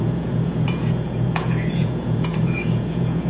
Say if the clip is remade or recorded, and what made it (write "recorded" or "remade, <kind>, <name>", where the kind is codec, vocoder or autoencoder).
remade, vocoder, Vocos